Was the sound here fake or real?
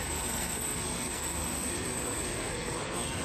fake